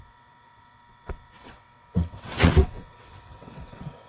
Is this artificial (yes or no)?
yes